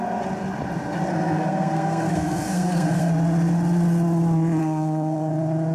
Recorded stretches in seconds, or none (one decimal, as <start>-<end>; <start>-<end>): 0.0-1.1; 3.1-4.6; 5.3-5.7